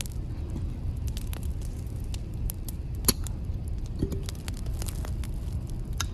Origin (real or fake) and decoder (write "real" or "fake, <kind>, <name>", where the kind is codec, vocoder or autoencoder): real